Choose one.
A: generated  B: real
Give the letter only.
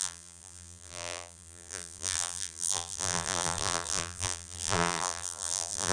A